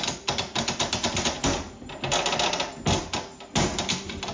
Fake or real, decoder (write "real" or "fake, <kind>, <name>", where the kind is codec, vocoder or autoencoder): real